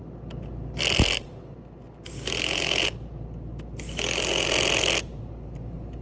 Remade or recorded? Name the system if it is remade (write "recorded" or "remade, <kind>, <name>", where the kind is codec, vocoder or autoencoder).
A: recorded